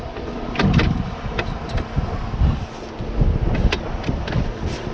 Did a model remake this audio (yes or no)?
no